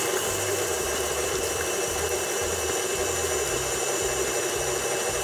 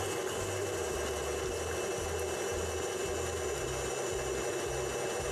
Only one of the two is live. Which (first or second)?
second